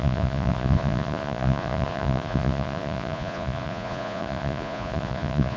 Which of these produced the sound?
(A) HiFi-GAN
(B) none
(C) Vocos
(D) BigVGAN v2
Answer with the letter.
C